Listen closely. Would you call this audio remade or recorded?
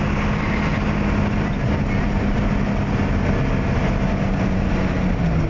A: recorded